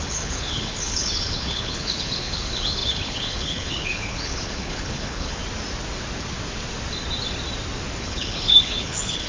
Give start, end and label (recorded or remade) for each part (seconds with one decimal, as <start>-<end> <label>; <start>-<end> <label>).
0.0-5.4 remade; 5.4-8.0 recorded; 8.0-9.3 remade